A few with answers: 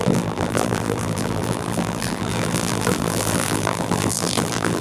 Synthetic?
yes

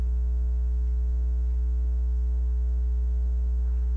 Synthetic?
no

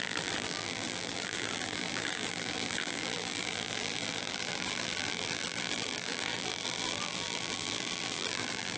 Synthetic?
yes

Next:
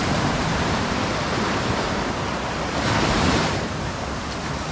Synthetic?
yes